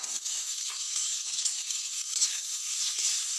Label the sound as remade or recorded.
remade